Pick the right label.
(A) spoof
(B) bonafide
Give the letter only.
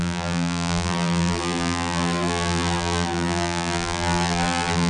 A